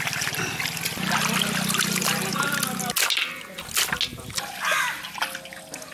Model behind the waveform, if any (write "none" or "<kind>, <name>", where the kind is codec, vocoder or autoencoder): none